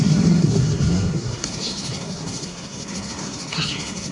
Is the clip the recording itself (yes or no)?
no